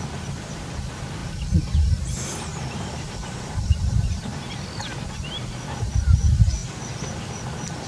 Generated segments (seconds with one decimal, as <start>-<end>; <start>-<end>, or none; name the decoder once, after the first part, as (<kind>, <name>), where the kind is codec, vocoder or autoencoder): 2.5-4.4 (vocoder, BigVGAN v2)